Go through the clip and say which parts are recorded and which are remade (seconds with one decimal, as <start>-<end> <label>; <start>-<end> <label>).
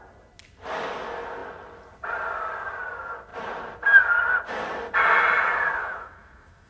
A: 0.0-5.8 recorded; 5.8-6.7 remade